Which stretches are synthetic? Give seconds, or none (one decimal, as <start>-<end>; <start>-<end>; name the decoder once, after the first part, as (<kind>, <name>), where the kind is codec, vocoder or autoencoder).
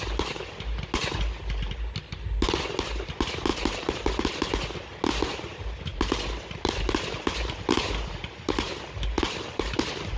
3.5-4.5 (vocoder, BigVGAN v2); 5.9-10.2